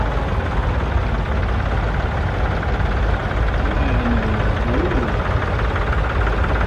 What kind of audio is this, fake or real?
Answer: real